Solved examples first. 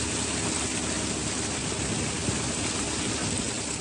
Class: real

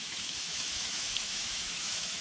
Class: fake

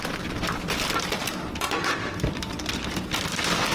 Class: fake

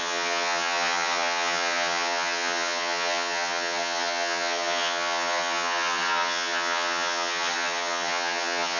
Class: fake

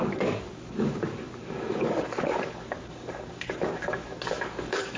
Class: fake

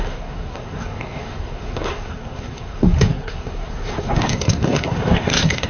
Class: fake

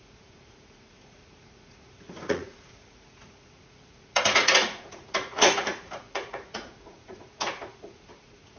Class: fake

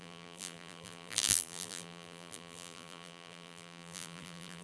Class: fake